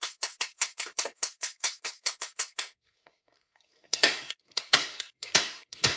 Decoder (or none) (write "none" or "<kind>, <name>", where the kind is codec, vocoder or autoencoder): codec, SNAC